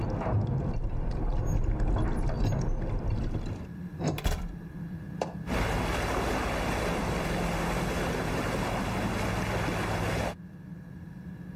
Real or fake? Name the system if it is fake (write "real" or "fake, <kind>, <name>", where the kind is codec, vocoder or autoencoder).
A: real